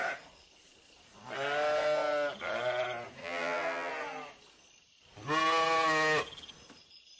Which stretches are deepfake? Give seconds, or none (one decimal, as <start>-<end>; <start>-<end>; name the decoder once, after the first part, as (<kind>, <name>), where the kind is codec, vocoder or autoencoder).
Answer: 3.2-3.9 (vocoder, BigVGAN v2)